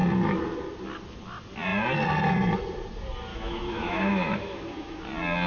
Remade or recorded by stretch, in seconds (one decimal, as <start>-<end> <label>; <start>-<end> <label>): 0.0-3.3 recorded; 3.3-5.0 remade; 5.0-5.5 recorded